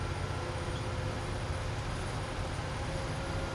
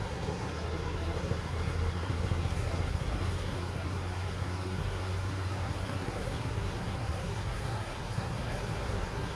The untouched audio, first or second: first